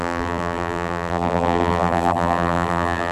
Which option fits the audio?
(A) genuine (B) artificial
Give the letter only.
B